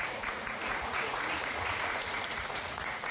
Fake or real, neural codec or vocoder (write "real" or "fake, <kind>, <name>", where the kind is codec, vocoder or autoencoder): fake, vocoder, Vocos